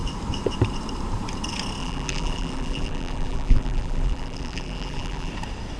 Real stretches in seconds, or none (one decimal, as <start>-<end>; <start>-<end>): 0.0-1.8; 5.3-5.8